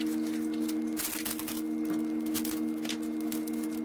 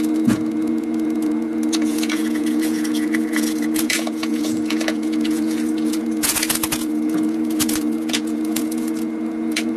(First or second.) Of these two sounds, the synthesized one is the second